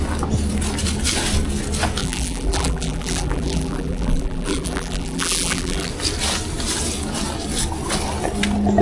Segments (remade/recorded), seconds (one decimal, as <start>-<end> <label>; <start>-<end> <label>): 0.0-2.0 recorded; 2.0-5.9 remade; 5.9-8.8 recorded